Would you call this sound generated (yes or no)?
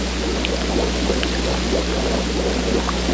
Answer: no